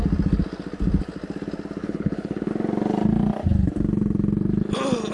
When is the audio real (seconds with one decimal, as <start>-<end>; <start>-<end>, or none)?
0.0-1.8; 2.5-5.1